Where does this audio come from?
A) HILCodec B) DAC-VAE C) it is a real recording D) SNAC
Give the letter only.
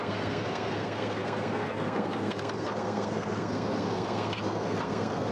D